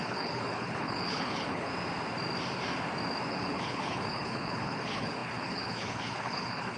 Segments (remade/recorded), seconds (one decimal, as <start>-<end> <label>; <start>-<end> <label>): 0.0-1.7 remade; 1.7-3.3 recorded; 3.3-6.8 remade